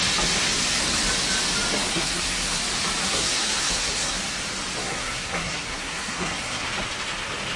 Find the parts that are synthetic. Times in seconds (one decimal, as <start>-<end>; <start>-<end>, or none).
1.9-2.6; 3.0-4.2; 4.8-6.7